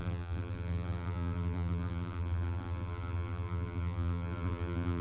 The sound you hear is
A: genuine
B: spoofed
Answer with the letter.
B